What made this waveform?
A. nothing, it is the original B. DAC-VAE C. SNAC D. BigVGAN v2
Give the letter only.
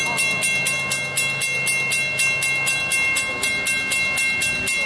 A